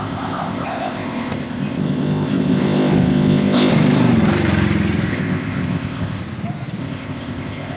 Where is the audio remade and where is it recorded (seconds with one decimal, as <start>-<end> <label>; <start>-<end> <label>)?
0.0-3.7 remade; 3.7-5.1 recorded; 5.1-6.2 remade; 6.2-6.8 recorded; 6.8-7.8 remade